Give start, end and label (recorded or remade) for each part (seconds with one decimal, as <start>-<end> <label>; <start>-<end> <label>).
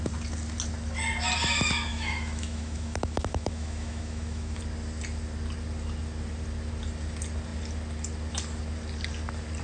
0.0-1.9 recorded; 1.9-4.6 remade; 4.6-9.6 recorded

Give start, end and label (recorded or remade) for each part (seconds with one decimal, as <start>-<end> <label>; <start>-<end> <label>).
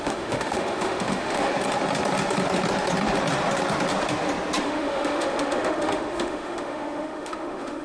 0.0-1.5 remade; 1.5-4.6 recorded; 4.6-7.8 remade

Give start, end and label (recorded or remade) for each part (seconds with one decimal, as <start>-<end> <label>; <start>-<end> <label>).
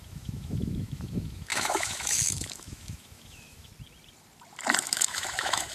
0.0-3.7 remade; 3.7-4.8 recorded; 4.8-5.7 remade